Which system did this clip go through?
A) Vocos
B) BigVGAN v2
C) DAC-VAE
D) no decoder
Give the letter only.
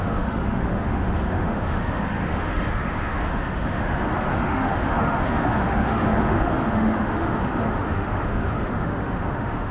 C